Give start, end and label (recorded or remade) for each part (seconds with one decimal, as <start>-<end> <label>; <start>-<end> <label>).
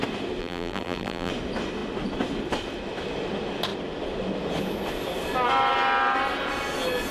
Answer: 0.0-0.4 recorded; 0.4-1.3 remade; 1.3-7.1 recorded